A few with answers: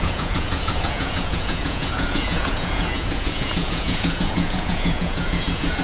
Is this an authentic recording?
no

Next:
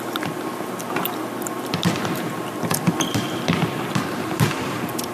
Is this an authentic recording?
yes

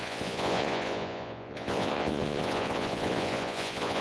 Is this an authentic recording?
no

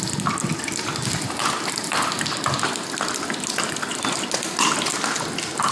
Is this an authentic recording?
yes